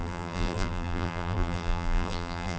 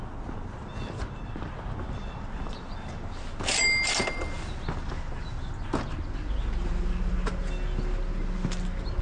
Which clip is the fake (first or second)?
first